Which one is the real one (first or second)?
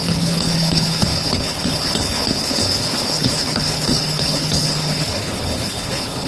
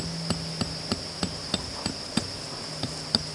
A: second